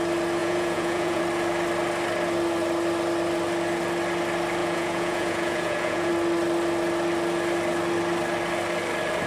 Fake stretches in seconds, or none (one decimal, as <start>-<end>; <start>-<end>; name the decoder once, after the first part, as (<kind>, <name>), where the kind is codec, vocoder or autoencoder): 0.4-1.2 (vocoder, Vocos); 4.6-6.1